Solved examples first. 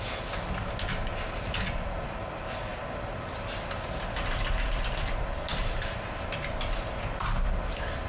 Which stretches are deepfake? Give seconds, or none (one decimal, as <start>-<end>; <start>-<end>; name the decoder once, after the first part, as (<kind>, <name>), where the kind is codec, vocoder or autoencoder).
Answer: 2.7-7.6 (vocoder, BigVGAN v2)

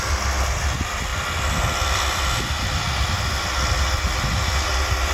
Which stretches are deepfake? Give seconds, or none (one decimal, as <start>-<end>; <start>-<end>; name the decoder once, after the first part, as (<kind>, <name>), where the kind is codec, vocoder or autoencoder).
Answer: none

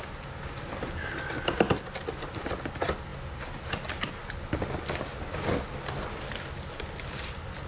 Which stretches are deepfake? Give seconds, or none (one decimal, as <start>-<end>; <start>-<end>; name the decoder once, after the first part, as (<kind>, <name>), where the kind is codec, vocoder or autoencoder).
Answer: none